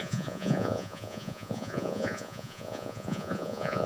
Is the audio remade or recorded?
remade